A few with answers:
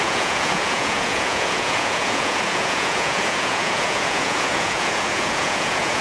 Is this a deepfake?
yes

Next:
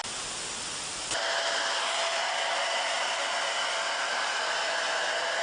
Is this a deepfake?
no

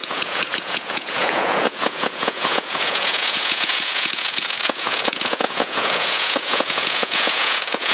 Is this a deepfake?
yes